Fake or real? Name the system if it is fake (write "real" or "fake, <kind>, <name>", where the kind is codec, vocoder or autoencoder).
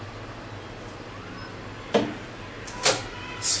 real